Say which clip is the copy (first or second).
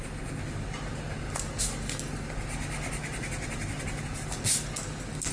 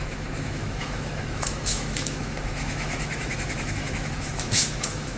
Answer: second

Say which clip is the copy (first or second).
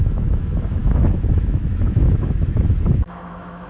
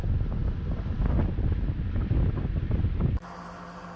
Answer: first